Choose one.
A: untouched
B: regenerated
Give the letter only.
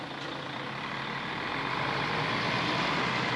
A